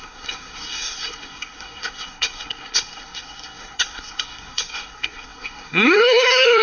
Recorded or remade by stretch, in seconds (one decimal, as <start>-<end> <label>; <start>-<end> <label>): 0.0-6.6 remade